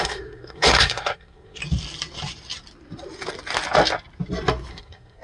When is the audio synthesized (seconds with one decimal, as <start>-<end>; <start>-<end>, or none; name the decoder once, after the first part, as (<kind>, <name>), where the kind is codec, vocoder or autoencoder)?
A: 0.0-1.6 (codec, SNAC); 4.7-5.2